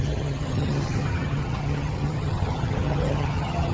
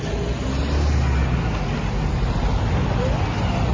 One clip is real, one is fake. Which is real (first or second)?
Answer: second